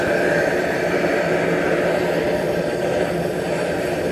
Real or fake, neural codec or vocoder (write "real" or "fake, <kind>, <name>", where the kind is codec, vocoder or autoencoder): real